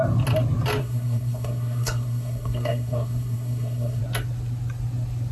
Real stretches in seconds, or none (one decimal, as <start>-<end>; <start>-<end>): 0.0-0.8; 4.0-5.3